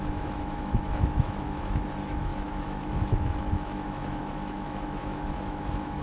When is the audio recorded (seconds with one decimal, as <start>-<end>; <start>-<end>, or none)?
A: none